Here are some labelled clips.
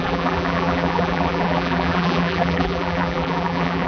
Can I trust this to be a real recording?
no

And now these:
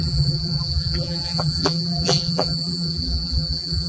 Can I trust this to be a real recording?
no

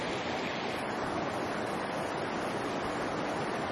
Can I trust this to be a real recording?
yes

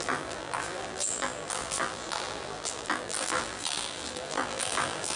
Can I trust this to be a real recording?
no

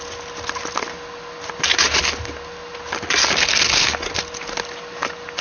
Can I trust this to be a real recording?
yes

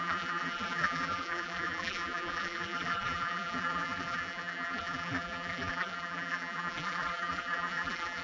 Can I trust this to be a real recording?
no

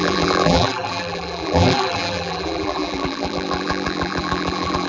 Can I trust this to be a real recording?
no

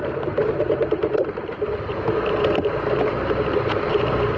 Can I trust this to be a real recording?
no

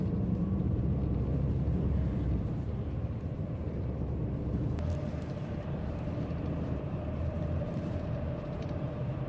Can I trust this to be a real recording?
no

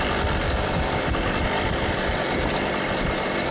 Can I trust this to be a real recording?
no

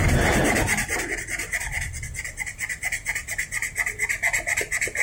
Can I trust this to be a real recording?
yes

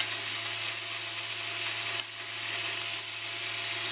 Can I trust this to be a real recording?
yes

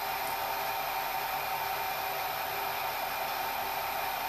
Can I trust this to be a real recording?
yes